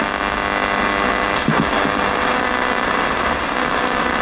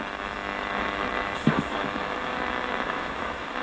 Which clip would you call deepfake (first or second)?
second